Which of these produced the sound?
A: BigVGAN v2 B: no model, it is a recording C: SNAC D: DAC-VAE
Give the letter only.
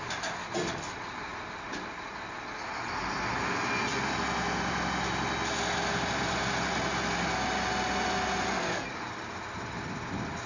B